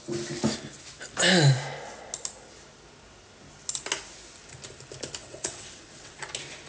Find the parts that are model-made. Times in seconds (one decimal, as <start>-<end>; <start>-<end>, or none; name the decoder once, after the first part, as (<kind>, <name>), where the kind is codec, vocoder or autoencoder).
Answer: 5.2-6.3 (vocoder, WaveNeXt)